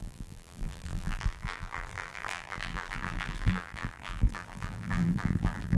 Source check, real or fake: fake